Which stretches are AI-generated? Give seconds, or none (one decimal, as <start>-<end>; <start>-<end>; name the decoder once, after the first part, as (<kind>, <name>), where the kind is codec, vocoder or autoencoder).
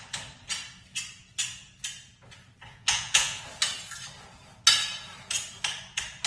2.7-3.4 (vocoder, Vocos)